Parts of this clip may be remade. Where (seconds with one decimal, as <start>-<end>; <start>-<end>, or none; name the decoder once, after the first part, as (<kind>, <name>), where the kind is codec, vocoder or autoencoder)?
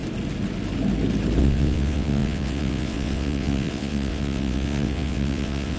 1.4-5.8 (vocoder, WaveNeXt)